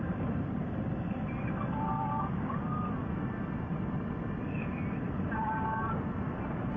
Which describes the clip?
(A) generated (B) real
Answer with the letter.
A